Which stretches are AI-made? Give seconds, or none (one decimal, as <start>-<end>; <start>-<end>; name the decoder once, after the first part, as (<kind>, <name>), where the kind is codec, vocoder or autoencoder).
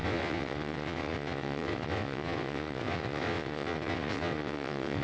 0.0-5.0 (vocoder, WaveNeXt)